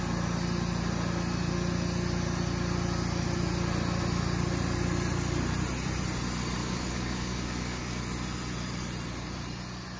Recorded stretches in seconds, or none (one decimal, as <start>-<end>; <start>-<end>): 0.0-6.6; 8.0-10.0